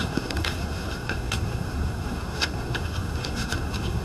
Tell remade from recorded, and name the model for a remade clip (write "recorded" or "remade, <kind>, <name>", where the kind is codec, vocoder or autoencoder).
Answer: remade, codec, SNAC